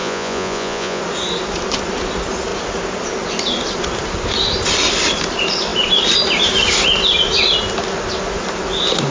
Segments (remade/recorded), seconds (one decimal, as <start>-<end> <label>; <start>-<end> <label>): 0.0-1.0 remade; 1.0-9.1 recorded